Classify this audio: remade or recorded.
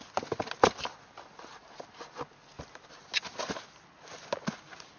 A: recorded